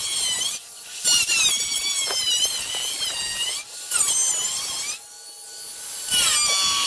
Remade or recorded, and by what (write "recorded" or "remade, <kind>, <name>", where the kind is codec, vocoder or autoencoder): recorded